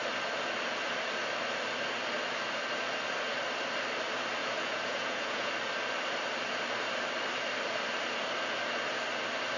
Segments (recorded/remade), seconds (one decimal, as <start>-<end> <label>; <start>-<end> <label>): 0.0-4.4 recorded; 4.4-5.5 remade; 5.5-9.6 recorded